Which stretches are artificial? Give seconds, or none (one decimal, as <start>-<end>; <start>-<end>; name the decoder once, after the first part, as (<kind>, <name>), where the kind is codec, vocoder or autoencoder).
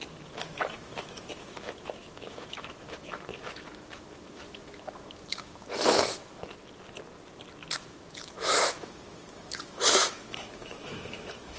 0.0-6.6 (autoencoder, DAC-VAE); 7.8-11.6